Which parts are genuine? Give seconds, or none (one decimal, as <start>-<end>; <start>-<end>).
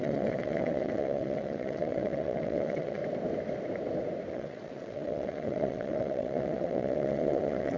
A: 3.0-4.3